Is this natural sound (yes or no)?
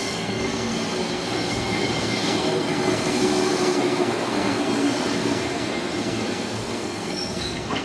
no